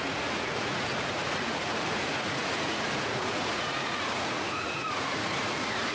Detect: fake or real fake